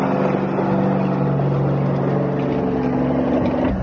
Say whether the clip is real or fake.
real